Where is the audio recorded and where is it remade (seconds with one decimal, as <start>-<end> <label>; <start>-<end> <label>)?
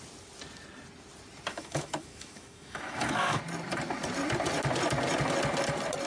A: 0.0-1.5 recorded; 1.5-3.4 remade; 3.4-6.1 recorded